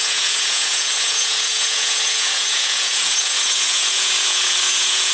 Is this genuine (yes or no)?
no